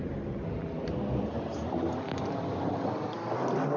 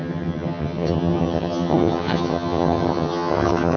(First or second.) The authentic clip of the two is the first